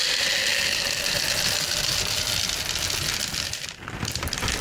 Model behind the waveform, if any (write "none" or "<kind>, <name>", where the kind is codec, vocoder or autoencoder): none